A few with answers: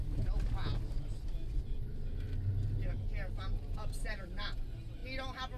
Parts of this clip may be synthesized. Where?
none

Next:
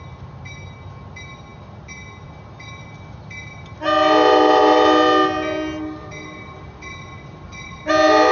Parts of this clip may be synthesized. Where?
none

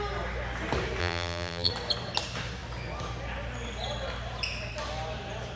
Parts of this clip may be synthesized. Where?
1.0-1.7 (vocoder, BigVGAN v2)

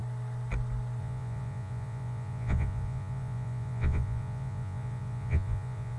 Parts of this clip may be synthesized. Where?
1.0-6.0 (vocoder, Vocos)

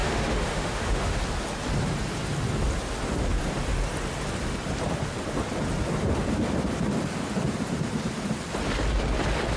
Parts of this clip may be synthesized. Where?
0.0-1.2 (autoencoder, DAC-VAE)